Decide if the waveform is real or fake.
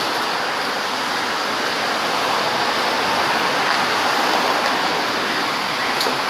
real